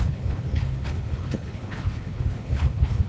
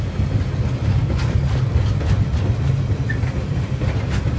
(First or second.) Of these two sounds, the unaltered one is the second